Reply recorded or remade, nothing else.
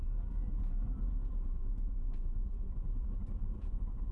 remade